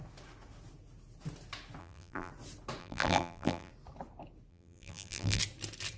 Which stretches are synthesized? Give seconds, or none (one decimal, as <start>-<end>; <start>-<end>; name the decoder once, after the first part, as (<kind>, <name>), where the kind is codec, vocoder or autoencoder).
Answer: 1.8-2.3 (vocoder, BigVGAN v2); 2.8-3.7; 4.5-5.4